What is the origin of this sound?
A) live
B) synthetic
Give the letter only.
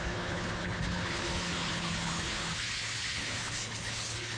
B